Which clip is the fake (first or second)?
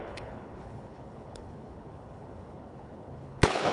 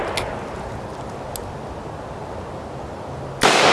first